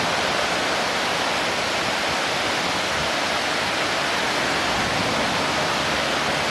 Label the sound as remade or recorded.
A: recorded